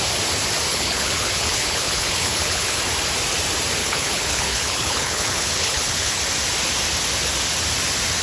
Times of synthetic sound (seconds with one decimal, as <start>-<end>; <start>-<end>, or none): 0.7-2.8; 3.8-6.2